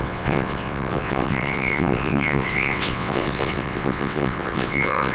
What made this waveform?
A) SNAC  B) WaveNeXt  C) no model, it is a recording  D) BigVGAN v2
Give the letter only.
B